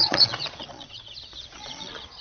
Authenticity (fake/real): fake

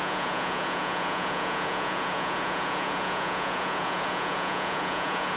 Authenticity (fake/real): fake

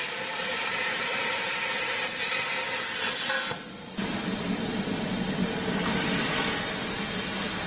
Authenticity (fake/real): real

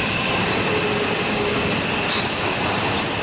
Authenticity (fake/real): real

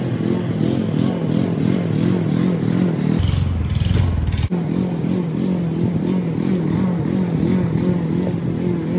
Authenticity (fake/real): real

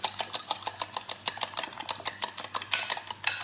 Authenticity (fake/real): real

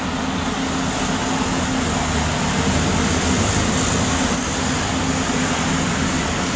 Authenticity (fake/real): real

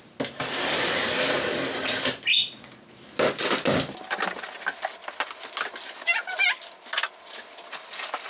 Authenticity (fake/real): real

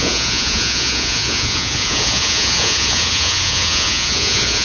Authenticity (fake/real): fake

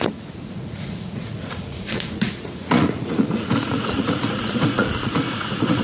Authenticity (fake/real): fake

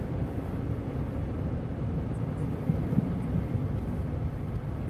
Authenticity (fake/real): real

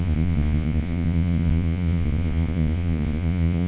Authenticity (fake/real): fake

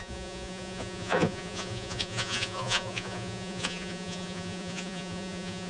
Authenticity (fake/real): fake